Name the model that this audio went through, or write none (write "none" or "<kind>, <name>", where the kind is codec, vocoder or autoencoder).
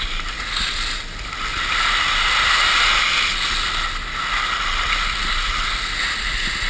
none